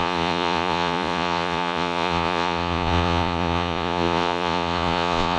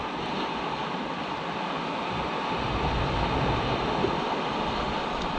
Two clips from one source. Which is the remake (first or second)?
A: first